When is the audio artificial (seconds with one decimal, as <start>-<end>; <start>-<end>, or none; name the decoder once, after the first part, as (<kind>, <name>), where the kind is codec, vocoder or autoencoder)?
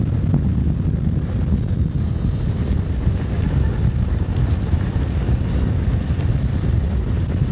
none